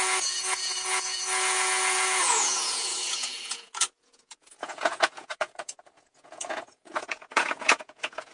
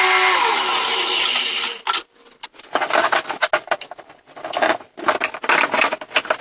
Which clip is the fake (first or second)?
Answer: first